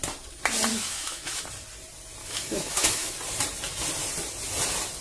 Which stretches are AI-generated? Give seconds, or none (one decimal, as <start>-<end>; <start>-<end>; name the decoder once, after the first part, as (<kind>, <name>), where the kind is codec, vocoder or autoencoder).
0.7-1.4 (autoencoder, DAC-VAE); 2.2-3.1